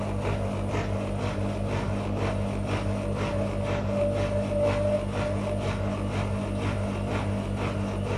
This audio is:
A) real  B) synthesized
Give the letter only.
A